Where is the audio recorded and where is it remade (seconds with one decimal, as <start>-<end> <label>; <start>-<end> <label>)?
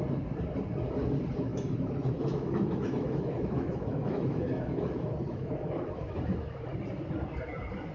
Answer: 0.0-1.5 recorded; 1.5-6.2 remade; 6.2-7.9 recorded